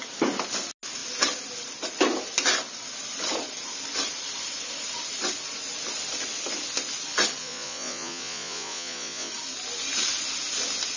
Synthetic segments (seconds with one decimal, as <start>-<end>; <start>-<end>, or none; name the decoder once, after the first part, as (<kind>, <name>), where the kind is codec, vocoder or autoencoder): 7.4-9.3 (vocoder, Vocos)